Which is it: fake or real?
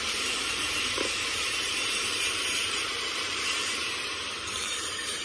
fake